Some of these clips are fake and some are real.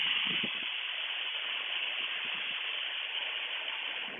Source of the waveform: real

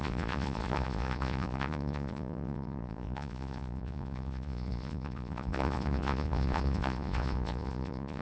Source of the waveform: fake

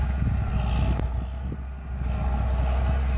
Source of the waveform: real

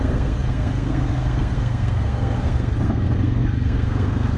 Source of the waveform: fake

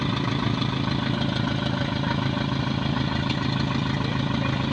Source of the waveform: real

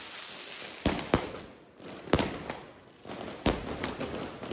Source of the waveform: real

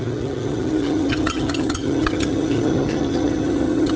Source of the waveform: fake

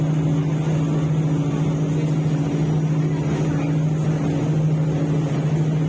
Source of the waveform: real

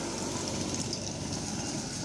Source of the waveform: real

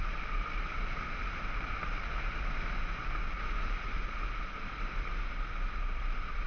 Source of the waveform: fake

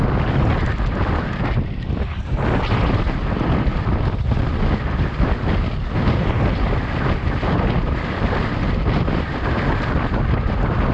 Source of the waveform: real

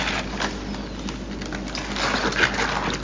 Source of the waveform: real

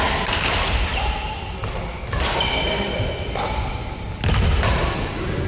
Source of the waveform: real